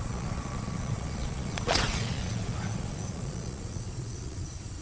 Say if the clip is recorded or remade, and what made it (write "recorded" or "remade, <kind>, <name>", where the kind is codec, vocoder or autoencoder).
remade, vocoder, Vocos